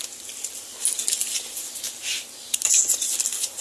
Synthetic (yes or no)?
no